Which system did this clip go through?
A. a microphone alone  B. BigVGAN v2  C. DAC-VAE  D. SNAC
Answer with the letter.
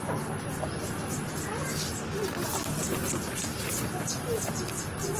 A